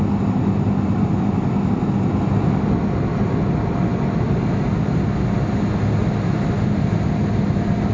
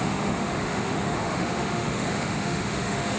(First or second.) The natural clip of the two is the first